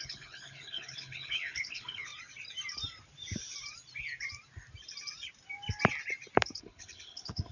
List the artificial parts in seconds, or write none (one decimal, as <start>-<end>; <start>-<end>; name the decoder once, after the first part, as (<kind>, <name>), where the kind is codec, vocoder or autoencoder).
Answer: 0.0-2.1 (codec, HILCodec); 6.6-7.5